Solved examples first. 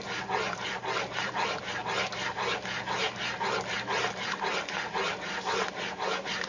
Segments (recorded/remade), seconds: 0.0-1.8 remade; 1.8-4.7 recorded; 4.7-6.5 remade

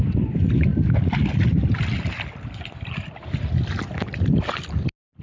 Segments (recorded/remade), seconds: 0.0-5.2 recorded

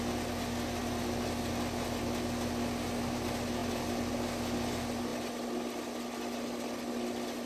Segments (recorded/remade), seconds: 0.0-0.8 recorded; 0.8-1.5 remade; 1.5-7.5 recorded

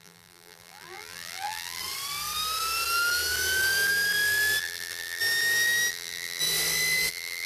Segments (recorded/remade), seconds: 0.0-1.8 remade; 1.8-4.6 recorded; 4.6-5.2 remade; 5.2-5.9 recorded; 5.9-6.4 remade; 6.4-7.1 recorded; 7.1-7.5 remade

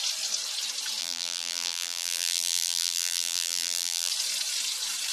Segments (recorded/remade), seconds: 0.0-1.0 recorded; 1.0-4.1 remade; 4.1-5.1 recorded

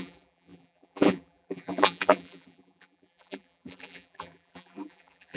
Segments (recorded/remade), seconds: 0.0-5.4 remade

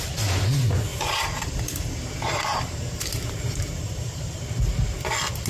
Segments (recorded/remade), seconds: 0.0-0.9 recorded; 0.9-4.2 remade; 4.2-5.5 recorded

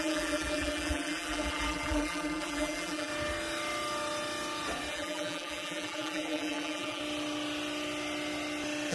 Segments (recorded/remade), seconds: 0.0-3.1 remade; 3.1-4.9 recorded; 4.9-7.0 remade; 7.0-8.9 recorded